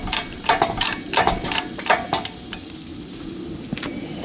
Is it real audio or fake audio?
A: real